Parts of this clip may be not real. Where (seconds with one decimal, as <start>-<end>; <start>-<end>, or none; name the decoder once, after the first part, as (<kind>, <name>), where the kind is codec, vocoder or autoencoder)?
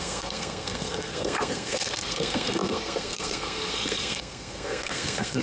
0.0-5.4 (codec, SNAC)